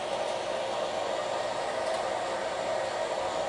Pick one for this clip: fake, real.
real